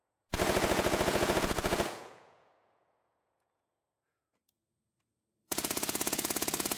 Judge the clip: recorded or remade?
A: remade